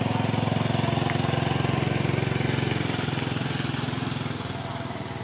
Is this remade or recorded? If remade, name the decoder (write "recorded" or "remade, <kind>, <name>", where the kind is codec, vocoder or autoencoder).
recorded